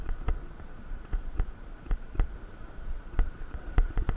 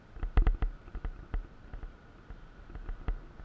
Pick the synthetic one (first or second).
first